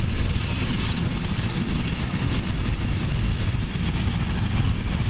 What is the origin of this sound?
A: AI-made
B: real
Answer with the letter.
B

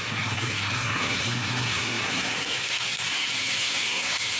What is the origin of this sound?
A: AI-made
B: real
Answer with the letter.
A